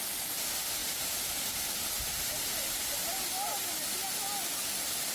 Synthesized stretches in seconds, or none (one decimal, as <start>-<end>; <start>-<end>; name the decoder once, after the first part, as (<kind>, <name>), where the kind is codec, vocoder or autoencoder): none